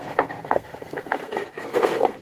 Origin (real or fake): fake